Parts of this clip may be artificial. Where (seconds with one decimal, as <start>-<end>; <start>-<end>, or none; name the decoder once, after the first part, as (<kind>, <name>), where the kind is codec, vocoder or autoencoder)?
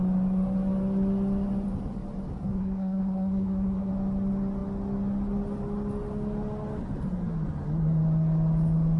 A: 2.5-3.9 (codec, SNAC)